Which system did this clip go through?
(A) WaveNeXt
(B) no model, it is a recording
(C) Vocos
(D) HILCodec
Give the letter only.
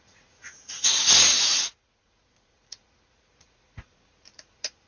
C